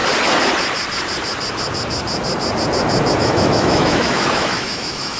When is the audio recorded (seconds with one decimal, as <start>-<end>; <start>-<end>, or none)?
0.0-3.1